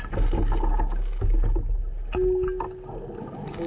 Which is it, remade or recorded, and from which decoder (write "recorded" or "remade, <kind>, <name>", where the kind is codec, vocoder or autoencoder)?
recorded